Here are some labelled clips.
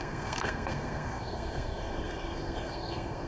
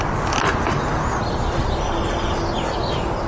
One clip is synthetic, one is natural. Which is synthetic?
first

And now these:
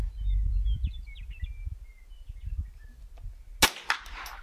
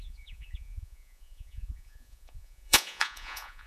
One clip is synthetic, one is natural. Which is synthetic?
second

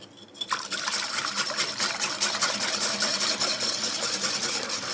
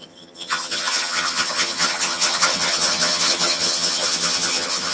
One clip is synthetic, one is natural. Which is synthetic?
second